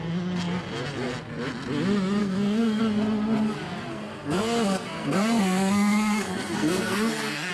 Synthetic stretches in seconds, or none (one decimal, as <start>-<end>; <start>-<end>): 2.2-2.8; 3.9-7.5